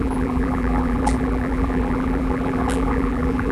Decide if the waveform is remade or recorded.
remade